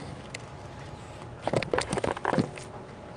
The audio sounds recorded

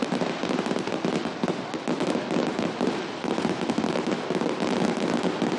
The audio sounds recorded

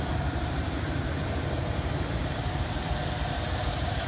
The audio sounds remade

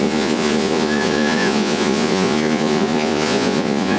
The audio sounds remade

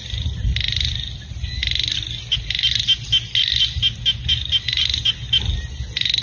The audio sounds recorded